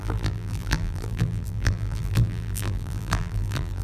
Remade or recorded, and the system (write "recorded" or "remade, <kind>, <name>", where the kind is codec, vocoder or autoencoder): remade, vocoder, BigVGAN v2